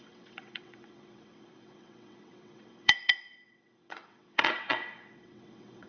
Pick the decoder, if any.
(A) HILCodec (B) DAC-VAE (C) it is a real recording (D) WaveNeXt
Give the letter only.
D